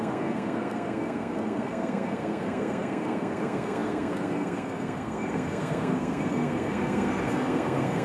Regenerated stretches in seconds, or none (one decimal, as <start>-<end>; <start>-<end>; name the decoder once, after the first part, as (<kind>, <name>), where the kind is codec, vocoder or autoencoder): 0.0-8.0 (codec, SNAC)

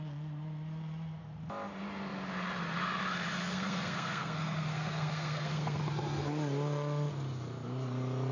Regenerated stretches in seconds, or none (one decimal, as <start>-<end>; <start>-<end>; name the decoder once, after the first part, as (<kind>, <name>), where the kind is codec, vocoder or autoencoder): 3.4-5.8 (codec, SNAC)

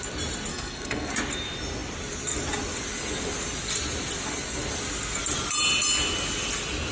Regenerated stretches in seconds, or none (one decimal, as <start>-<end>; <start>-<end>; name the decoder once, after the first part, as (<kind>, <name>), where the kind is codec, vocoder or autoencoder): 0.5-1.1 (codec, SNAC)

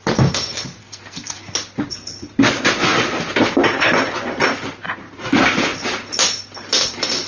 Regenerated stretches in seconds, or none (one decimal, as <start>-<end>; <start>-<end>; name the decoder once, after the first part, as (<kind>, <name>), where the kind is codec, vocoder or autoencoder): 0.8-1.5 (codec, SNAC)

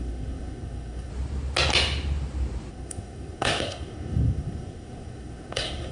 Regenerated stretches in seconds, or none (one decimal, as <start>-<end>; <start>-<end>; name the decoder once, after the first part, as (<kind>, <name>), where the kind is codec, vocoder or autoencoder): 0.0-1.1 (codec, SNAC); 2.7-5.9